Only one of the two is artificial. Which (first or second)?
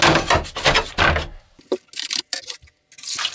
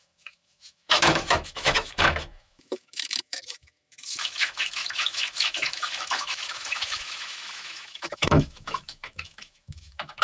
second